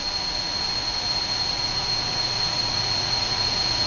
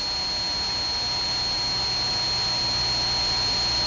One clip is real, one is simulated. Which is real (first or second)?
second